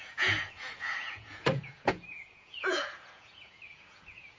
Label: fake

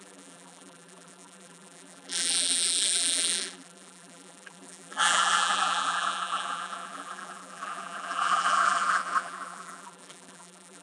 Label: fake